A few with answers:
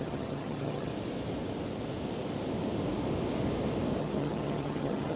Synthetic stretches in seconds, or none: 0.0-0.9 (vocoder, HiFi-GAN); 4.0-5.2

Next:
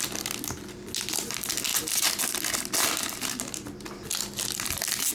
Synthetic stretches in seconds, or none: 1.7-2.2 (vocoder, BigVGAN v2)

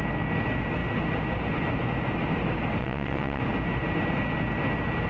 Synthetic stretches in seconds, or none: 2.8-3.4 (vocoder, WaveNeXt)

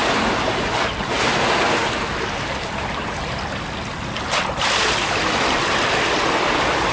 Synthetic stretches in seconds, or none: none

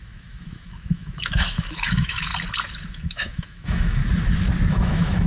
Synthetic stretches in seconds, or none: 0.0-2.3 (autoencoder, DAC-VAE); 2.9-4.0; 4.7-5.3

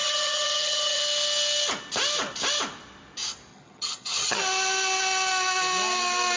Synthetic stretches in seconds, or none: 0.0-1.0 (vocoder, HiFi-GAN); 3.5-4.4

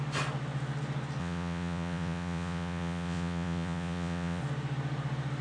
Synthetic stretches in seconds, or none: 1.2-4.4 (vocoder, Vocos)